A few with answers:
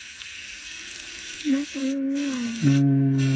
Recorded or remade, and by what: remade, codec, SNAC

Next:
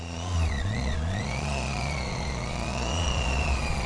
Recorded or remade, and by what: remade, vocoder, Vocos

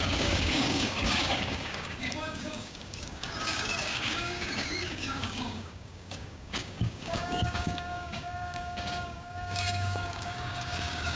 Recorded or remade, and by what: remade, codec, DAC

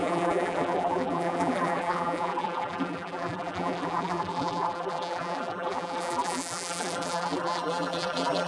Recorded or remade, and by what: remade, vocoder, BigVGAN v2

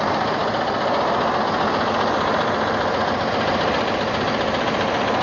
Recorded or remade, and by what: recorded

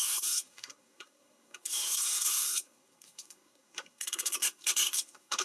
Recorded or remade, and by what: remade, codec, SNAC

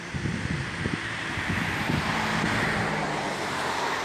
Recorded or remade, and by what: recorded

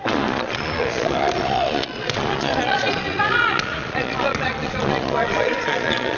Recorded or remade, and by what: remade, vocoder, Vocos